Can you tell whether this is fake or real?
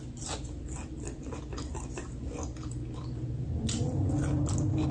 real